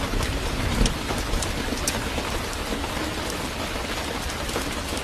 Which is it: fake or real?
real